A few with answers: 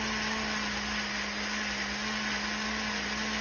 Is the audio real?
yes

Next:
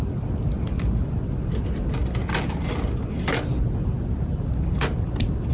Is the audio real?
yes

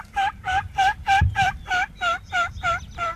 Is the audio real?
no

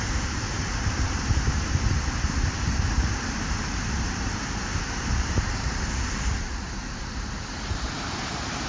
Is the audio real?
no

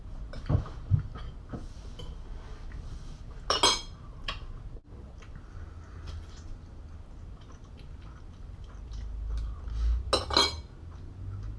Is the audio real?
yes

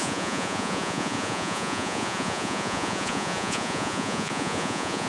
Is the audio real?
no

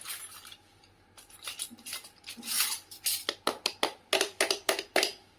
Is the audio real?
yes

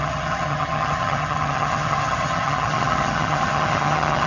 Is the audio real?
no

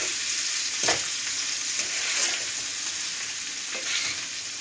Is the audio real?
yes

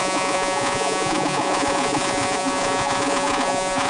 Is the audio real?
no